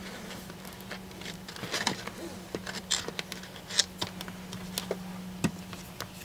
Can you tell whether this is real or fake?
real